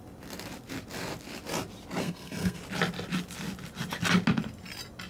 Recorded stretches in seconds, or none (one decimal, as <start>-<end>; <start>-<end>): 0.0-2.0; 2.6-5.1